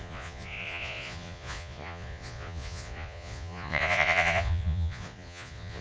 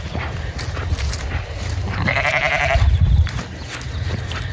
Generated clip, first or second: first